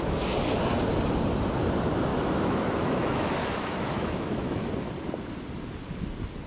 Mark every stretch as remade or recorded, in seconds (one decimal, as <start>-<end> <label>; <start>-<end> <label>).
0.0-2.1 recorded; 2.1-4.7 remade; 4.7-6.5 recorded